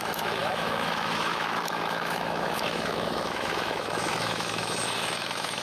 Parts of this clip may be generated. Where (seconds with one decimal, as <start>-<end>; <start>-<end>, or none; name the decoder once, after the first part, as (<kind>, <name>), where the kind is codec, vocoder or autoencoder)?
0.0-5.6 (autoencoder, DAC-VAE)